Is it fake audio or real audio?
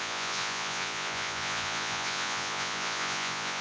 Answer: fake